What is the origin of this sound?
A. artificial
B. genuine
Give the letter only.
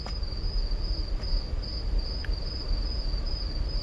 A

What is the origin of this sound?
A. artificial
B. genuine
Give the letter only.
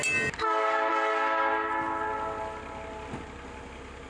B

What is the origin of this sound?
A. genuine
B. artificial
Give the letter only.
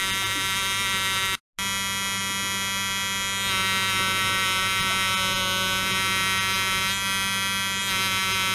A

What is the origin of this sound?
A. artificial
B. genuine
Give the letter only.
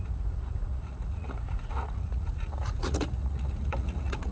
A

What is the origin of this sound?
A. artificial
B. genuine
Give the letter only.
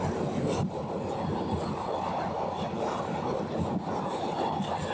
B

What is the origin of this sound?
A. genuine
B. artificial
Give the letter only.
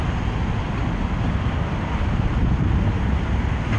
A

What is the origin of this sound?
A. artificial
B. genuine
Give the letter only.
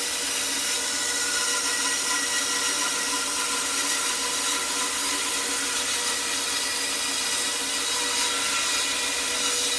B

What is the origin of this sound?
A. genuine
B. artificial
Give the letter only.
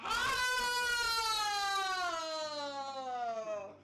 A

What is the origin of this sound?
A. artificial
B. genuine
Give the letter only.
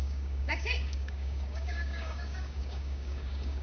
A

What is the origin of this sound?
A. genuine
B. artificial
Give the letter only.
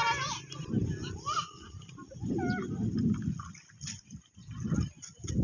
A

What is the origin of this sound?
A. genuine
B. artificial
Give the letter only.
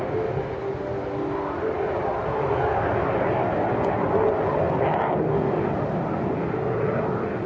A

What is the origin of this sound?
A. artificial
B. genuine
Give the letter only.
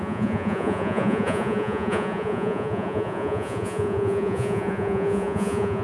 A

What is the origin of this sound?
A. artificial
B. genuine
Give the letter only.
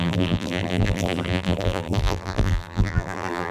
A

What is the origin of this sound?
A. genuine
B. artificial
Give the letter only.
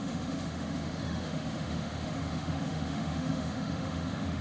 B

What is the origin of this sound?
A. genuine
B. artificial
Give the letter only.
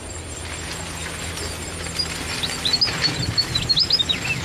A